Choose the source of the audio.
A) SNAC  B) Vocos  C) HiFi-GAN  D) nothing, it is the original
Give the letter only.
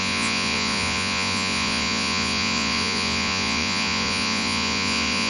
B